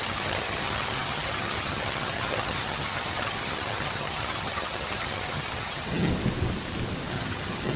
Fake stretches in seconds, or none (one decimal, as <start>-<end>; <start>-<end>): 0.0-6.1; 7.1-7.8